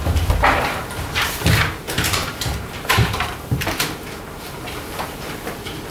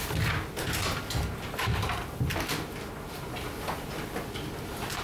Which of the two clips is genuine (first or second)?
second